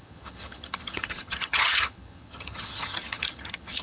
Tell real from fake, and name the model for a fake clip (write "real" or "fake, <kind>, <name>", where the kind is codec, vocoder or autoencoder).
fake, vocoder, HiFi-GAN